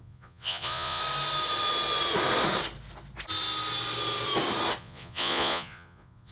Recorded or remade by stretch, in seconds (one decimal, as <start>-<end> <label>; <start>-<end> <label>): 0.0-1.0 remade; 1.0-4.8 recorded; 4.8-6.3 remade

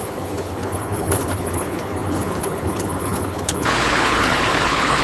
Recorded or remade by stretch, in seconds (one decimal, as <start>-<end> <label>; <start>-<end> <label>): 0.0-5.0 remade